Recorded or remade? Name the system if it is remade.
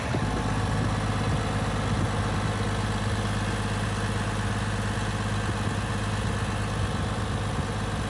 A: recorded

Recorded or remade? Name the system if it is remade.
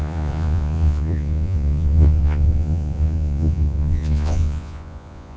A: remade, vocoder, Vocos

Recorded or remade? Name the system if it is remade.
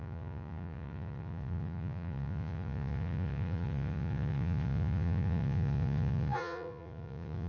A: remade, vocoder, Vocos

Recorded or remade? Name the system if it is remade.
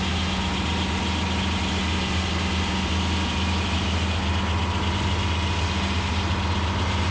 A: recorded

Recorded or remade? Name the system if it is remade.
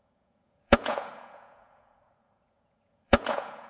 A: remade, vocoder, Vocos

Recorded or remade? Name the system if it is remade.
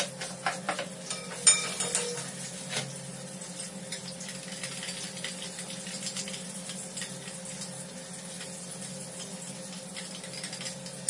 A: recorded